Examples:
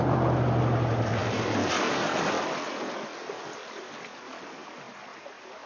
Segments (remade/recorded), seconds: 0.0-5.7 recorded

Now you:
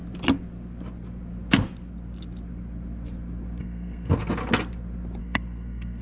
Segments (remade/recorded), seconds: 0.0-3.6 recorded; 3.6-4.1 remade; 4.1-5.2 recorded; 5.2-6.0 remade